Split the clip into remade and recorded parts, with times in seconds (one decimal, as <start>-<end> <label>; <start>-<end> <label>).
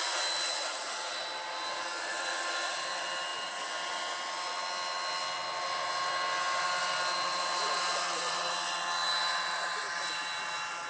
0.0-0.5 recorded; 0.5-1.1 remade; 1.1-10.9 recorded